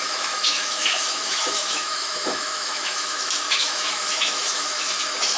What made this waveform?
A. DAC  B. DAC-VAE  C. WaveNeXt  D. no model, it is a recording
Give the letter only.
B